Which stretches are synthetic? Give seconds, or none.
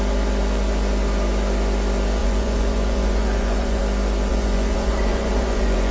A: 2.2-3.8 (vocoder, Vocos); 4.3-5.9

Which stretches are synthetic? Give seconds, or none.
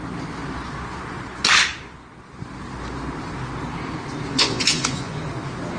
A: 4.3-5.2 (vocoder, Vocos)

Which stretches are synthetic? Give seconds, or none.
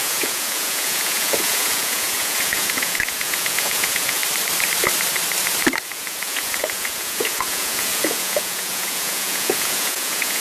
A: 0.0-4.2 (vocoder, Vocos); 5.8-10.4